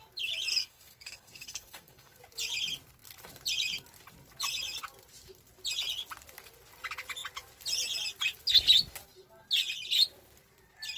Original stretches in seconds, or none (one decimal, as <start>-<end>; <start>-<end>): 0.0-0.6; 2.2-11.0